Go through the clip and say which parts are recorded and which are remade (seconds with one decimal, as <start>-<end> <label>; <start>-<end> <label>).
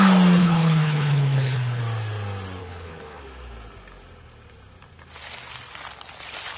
0.0-0.4 recorded; 0.4-1.8 remade; 1.8-2.6 recorded; 2.6-3.2 remade; 3.2-6.6 recorded